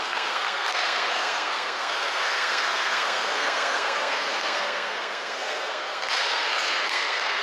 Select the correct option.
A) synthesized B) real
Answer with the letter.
A